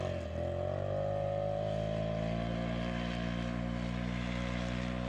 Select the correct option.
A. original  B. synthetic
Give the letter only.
A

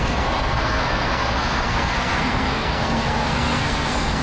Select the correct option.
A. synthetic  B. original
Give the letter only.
A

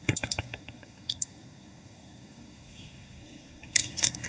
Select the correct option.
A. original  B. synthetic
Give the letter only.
B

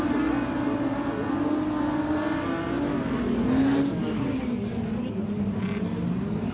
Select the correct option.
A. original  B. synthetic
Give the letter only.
A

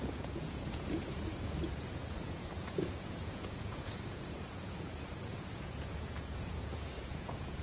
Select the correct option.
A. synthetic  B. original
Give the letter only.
A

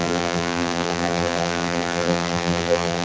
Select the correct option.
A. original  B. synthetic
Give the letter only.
B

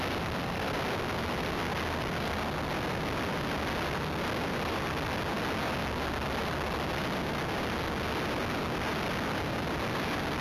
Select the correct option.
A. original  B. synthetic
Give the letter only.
A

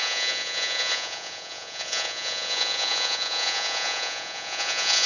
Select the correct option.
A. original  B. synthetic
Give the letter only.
B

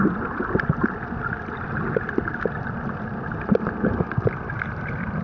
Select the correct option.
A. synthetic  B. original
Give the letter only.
B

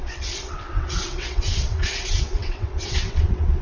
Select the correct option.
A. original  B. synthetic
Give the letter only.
B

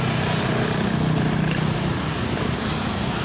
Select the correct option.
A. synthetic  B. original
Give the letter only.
B